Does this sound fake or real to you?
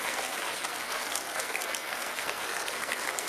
fake